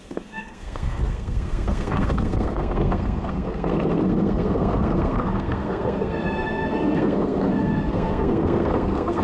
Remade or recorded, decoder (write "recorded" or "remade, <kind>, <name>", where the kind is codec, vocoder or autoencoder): remade, codec, SNAC